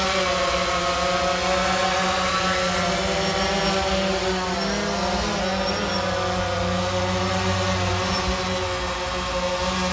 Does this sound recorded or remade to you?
recorded